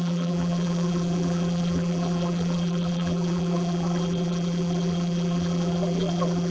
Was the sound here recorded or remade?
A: remade